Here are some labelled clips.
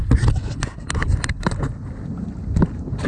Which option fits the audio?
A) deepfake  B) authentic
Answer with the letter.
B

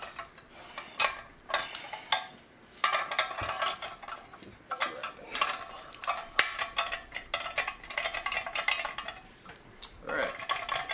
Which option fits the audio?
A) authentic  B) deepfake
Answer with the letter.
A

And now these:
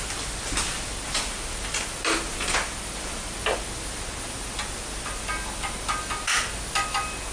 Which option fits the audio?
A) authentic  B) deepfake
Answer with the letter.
A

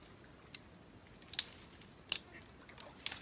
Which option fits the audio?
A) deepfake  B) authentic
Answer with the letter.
B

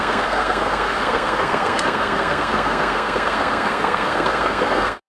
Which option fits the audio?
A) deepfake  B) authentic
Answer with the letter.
A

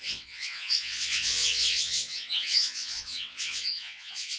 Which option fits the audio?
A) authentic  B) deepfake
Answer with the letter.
B